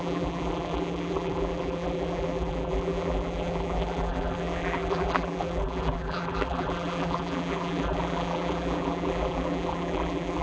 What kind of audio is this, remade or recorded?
remade